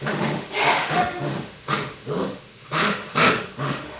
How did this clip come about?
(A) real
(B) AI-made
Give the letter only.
B